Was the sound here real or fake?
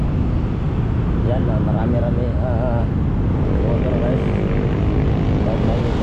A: real